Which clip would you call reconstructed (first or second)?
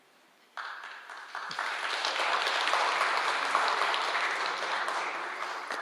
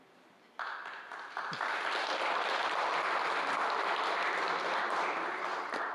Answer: second